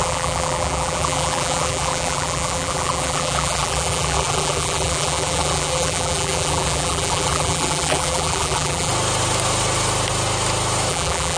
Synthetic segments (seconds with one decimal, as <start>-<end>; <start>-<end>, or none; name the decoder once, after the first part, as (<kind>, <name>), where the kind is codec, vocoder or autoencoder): 0.0-8.9 (vocoder, BigVGAN v2); 10.9-11.4